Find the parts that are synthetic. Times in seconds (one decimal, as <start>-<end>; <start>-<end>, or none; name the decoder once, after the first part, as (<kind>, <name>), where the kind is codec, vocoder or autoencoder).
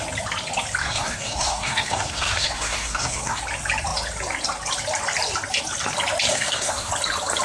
0.8-3.4 (codec, SNAC); 6.3-6.9